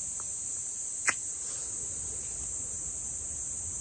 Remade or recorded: recorded